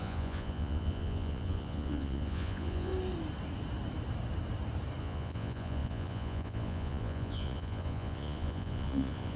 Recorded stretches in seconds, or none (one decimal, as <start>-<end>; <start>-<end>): 2.9-5.0